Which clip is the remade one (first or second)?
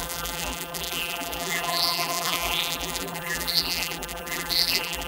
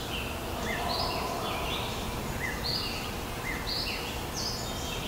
first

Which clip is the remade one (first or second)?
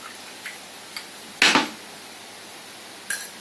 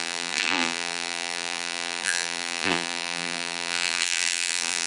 second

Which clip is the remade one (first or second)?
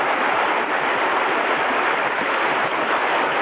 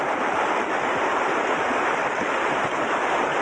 second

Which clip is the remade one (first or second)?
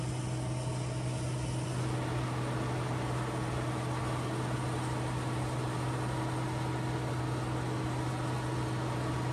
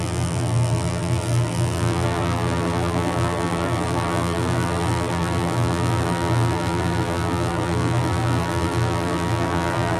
second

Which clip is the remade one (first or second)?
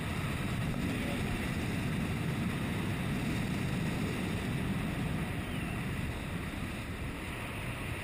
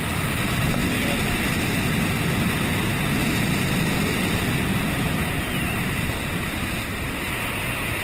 first